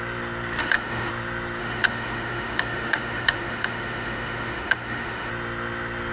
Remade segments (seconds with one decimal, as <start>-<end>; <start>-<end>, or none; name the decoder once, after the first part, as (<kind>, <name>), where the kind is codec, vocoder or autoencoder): 0.6-1.1 (autoencoder, DAC-VAE); 1.6-5.3